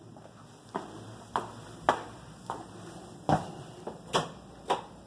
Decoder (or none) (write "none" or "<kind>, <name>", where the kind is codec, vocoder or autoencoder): none